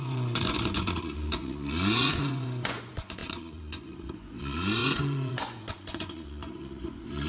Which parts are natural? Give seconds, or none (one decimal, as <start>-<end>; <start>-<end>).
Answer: none